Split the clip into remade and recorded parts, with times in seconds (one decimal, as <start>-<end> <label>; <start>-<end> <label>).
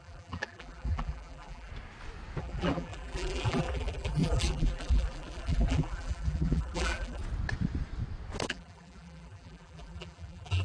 0.0-1.7 remade; 1.7-2.4 recorded; 2.4-7.2 remade; 7.2-8.5 recorded; 8.5-10.6 remade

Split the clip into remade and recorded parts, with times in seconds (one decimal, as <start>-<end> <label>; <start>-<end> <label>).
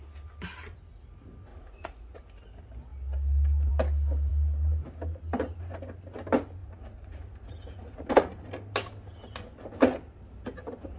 0.0-1.5 recorded; 1.5-2.2 remade; 2.2-6.6 recorded; 6.6-8.4 remade; 8.4-11.0 recorded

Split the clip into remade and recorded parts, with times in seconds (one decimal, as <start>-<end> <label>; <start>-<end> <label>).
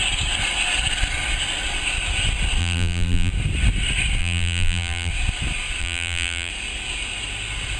0.0-2.6 recorded; 2.6-3.3 remade; 3.3-4.2 recorded; 4.2-5.1 remade; 5.1-5.8 recorded; 5.8-6.5 remade; 6.5-7.8 recorded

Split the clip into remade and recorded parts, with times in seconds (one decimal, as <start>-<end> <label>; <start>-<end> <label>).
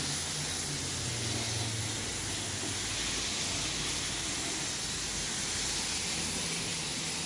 0.0-7.3 recorded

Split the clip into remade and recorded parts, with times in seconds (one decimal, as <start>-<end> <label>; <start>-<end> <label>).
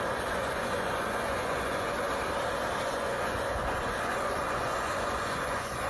0.0-2.1 remade; 2.1-2.8 recorded; 2.8-5.9 remade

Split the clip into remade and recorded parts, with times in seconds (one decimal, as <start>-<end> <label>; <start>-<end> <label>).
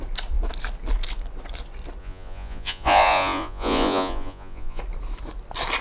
0.0-2.0 recorded; 2.0-4.8 remade; 4.8-5.8 recorded